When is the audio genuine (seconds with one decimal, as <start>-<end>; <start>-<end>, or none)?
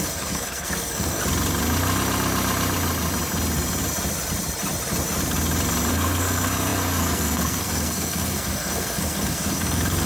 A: 1.2-5.9